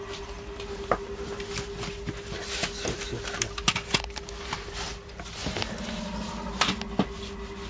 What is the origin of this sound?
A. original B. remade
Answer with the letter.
A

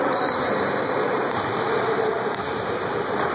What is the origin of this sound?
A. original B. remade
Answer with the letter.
B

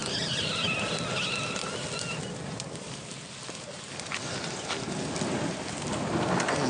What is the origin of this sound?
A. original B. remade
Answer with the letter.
A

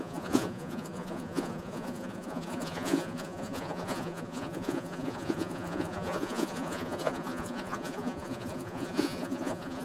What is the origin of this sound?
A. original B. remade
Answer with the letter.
B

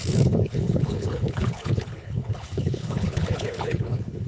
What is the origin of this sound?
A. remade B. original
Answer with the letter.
A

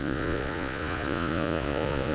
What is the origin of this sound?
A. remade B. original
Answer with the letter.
A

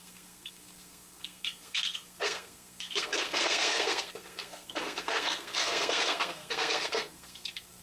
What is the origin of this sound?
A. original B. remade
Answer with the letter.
B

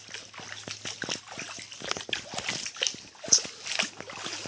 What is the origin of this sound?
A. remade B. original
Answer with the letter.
B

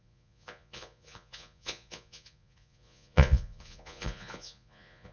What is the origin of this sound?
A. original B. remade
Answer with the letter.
B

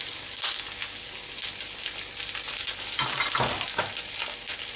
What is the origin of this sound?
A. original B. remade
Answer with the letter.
A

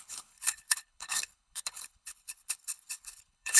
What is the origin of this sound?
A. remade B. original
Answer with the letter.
A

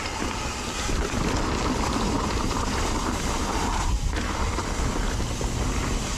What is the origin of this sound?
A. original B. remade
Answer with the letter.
A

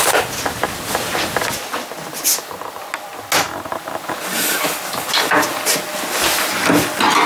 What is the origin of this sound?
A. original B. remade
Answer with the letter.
A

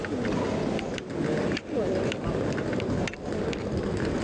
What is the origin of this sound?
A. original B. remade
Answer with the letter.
A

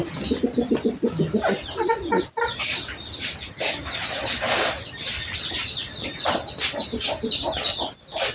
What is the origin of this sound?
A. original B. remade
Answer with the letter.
A